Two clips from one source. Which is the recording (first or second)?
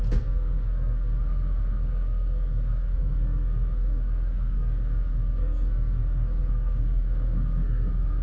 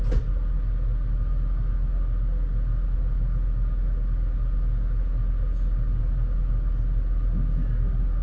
second